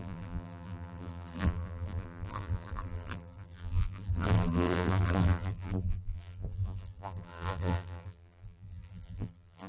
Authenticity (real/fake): fake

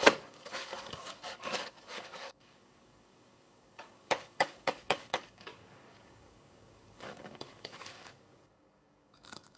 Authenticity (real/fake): fake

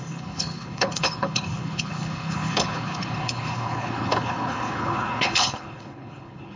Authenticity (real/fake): fake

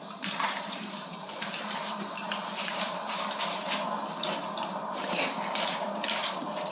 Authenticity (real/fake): fake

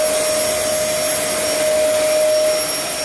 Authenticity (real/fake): real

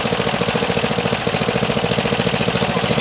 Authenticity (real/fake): real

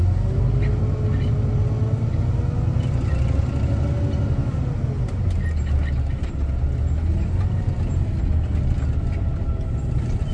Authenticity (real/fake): real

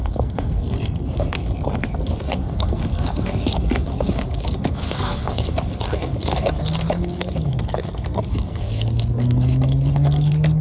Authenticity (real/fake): fake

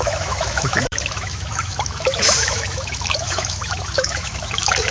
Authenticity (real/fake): fake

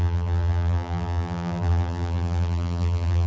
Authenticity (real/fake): fake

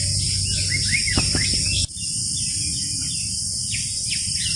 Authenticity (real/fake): real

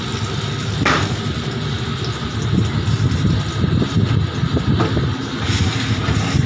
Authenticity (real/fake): real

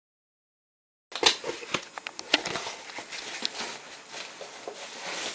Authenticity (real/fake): real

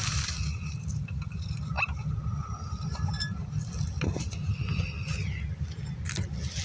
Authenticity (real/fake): real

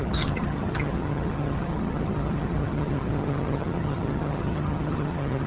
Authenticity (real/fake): fake